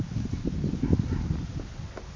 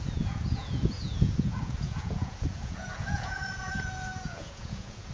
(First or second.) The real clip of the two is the first